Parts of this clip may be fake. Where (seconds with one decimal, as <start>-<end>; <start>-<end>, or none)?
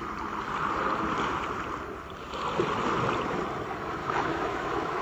4.0-5.0